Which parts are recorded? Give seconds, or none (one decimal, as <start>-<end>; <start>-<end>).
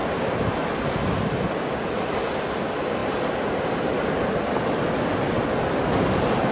0.0-6.5